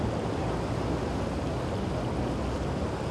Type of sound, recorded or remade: recorded